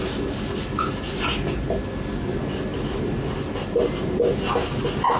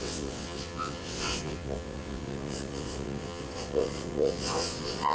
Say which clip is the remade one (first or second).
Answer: second